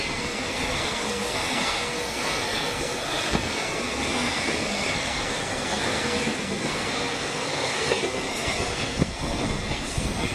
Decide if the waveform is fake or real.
fake